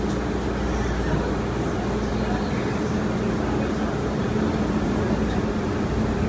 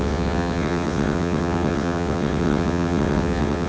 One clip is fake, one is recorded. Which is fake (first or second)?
second